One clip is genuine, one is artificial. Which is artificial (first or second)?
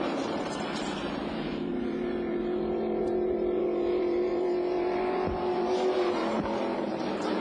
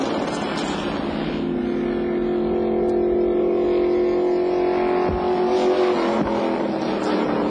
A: first